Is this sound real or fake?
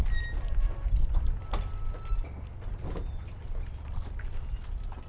real